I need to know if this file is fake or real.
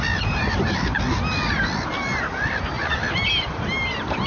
real